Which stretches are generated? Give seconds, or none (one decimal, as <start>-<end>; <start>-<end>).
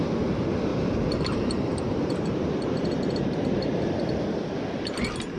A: 0.7-3.9